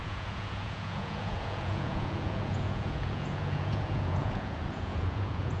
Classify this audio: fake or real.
fake